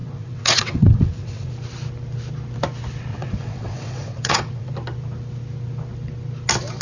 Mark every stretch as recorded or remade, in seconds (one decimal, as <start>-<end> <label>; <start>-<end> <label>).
0.0-1.5 remade; 1.5-3.1 recorded; 3.1-4.7 remade; 4.7-6.8 recorded

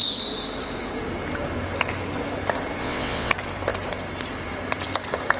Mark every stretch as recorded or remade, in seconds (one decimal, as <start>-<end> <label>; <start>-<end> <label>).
0.0-2.8 recorded; 2.8-3.3 remade; 3.3-5.4 recorded

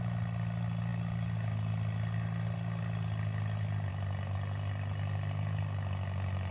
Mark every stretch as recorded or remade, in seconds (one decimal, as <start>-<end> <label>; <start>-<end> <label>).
0.0-6.5 recorded

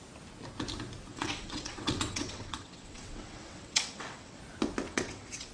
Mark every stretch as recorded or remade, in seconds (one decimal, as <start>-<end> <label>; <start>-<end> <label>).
0.0-1.1 recorded; 1.1-4.4 remade; 4.4-4.9 recorded; 4.9-5.5 remade

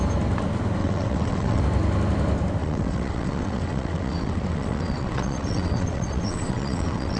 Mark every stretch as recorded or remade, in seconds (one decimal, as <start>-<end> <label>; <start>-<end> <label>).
0.0-0.8 recorded; 0.8-1.6 remade; 1.6-2.6 recorded; 2.6-7.2 remade